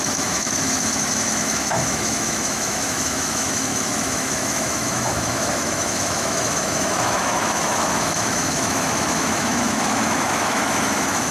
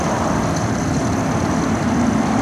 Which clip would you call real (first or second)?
second